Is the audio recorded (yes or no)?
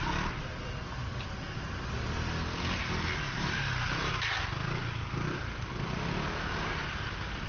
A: yes